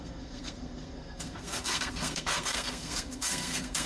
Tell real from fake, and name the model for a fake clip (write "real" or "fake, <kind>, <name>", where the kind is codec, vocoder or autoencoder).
fake, codec, SNAC